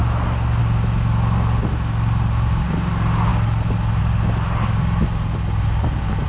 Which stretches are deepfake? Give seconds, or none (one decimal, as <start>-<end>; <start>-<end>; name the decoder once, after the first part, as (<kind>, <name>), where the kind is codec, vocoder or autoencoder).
none